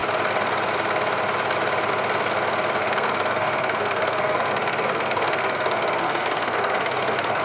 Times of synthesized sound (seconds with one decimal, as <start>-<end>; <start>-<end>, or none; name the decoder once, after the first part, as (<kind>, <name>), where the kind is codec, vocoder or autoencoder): 2.8-7.4 (codec, SNAC)